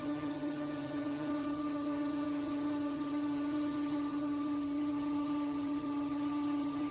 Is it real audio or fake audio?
fake